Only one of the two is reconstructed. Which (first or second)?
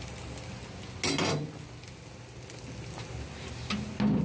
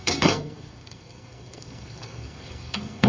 second